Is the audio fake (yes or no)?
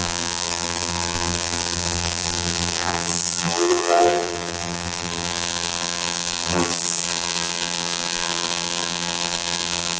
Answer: yes